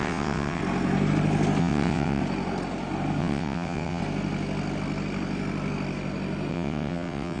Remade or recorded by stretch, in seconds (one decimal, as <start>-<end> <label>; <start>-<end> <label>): 0.0-0.6 remade; 0.6-1.6 recorded; 1.6-2.2 remade; 2.2-3.2 recorded; 3.2-4.0 remade; 4.0-6.5 recorded; 6.5-7.4 remade